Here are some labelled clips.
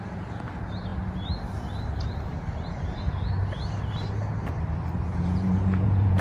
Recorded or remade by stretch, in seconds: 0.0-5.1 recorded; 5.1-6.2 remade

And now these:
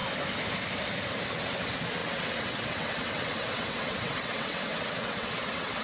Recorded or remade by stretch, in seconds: 0.0-1.3 recorded; 1.3-5.8 remade